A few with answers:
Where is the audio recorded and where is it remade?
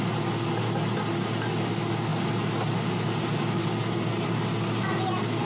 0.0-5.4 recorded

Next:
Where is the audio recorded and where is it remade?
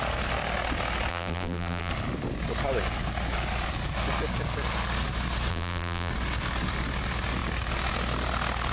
0.0-1.1 recorded; 1.1-1.9 remade; 1.9-5.5 recorded; 5.5-6.1 remade; 6.1-8.7 recorded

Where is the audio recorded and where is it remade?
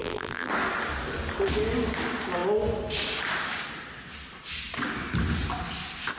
0.0-0.5 remade; 0.5-6.2 recorded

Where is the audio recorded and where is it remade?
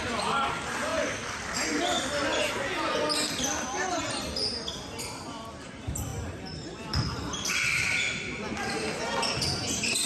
0.0-0.9 remade; 0.9-3.4 recorded; 3.4-10.1 remade